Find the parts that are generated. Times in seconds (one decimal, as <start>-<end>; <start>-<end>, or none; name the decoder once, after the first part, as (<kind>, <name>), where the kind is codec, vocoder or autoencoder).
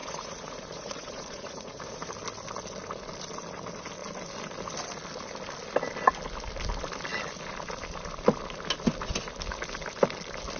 0.0-2.1 (vocoder, Vocos)